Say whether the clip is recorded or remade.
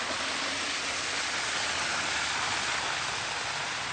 recorded